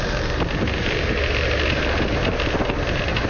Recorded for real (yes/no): yes